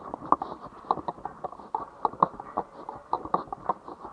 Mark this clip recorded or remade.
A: recorded